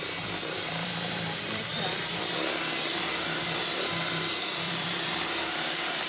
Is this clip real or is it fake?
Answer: fake